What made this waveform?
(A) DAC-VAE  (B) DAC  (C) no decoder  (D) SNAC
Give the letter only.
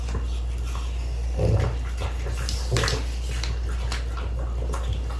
C